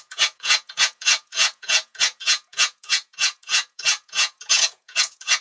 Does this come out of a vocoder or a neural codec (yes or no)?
yes